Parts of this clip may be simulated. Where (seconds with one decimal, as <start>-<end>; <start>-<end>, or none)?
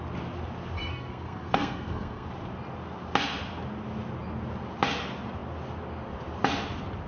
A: 0.9-2.3